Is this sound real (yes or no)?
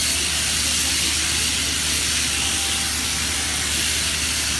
yes